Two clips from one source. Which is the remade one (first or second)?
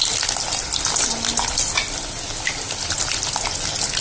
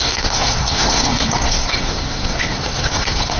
second